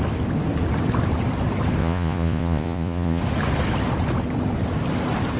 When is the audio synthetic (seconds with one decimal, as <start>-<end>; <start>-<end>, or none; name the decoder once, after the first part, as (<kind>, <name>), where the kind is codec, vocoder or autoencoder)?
1.8-3.2 (vocoder, Vocos)